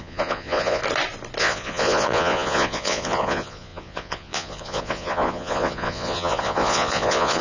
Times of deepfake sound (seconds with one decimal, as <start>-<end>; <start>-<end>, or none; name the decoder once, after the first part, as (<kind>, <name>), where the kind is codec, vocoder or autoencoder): 0.0-0.8 (vocoder, Vocos); 1.4-7.4